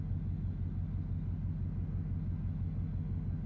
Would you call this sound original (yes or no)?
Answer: yes